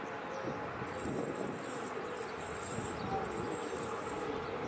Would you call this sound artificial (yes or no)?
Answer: no